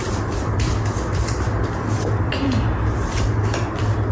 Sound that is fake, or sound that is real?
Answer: fake